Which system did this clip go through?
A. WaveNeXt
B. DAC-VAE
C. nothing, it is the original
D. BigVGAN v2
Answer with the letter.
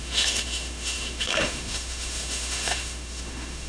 B